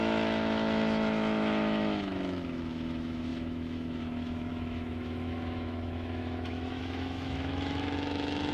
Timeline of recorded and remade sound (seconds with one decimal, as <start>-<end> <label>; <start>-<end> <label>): 0.0-8.5 remade